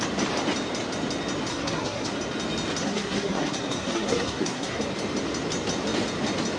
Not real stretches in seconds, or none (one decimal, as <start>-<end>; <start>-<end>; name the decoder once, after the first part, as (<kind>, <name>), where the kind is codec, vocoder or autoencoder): 1.5-2.2 (codec, SNAC); 2.8-4.8